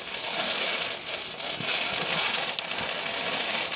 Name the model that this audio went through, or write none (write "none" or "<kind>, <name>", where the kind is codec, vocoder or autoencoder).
none